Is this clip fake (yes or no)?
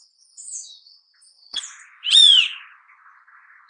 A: yes